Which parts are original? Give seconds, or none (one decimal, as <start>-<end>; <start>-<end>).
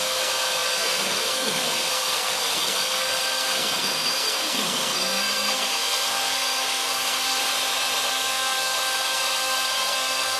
7.4-8.1